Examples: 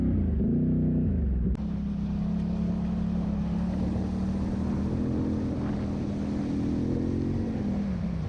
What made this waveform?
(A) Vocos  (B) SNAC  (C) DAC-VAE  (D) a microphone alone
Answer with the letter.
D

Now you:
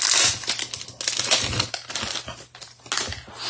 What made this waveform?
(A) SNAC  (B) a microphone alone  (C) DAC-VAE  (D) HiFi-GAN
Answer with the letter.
B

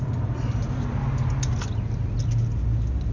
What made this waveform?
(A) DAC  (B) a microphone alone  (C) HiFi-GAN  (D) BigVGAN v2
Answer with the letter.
B